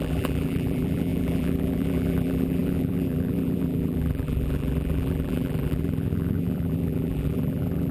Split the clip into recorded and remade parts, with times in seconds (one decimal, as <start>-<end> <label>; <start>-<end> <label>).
0.0-7.9 remade